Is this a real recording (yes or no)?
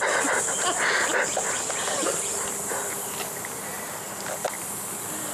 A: yes